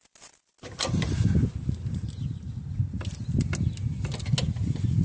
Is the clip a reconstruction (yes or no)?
no